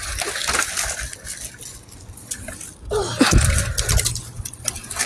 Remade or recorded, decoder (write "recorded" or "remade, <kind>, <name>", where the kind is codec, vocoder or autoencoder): recorded